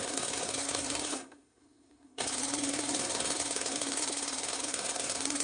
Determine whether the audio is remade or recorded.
remade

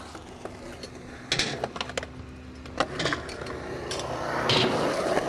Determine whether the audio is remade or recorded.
recorded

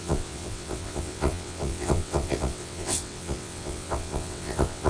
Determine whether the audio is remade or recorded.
remade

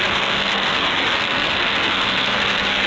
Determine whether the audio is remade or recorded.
remade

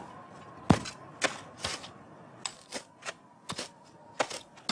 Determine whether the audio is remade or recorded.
recorded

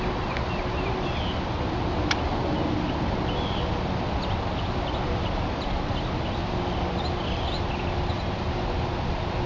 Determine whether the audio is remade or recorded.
recorded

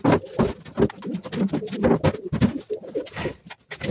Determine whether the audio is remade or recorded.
recorded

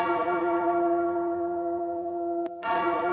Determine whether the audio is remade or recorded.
remade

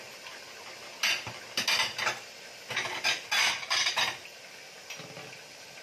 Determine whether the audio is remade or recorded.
recorded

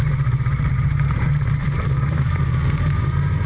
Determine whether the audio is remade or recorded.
remade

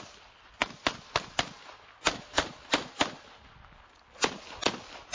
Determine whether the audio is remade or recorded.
recorded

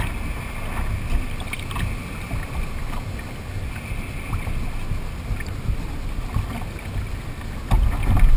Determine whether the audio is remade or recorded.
recorded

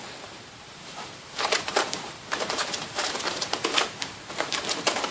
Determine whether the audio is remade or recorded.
remade